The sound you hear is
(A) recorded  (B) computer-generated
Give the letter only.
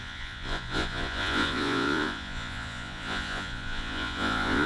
B